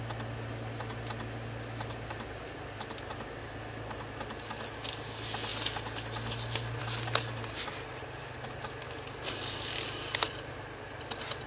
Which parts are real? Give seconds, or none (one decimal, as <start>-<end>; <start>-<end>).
0.0-11.5